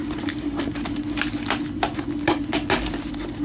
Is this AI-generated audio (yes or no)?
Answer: no